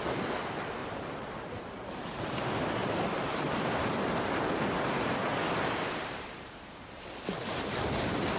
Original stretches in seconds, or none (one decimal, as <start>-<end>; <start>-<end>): 0.0-0.8; 2.2-2.8; 7.0-8.4